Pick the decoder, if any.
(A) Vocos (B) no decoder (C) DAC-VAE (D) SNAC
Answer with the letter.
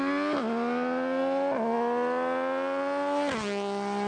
B